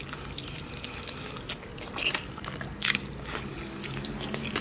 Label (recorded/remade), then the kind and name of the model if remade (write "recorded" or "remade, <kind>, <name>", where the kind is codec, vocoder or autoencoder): recorded